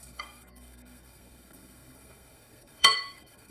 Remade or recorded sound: remade